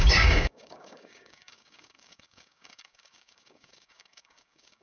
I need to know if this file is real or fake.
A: fake